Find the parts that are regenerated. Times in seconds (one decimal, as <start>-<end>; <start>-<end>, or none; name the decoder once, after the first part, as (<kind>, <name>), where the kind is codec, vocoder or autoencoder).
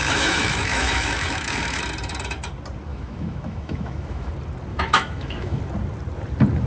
0.0-1.8 (autoencoder, DAC-VAE); 2.9-4.3; 4.7-5.6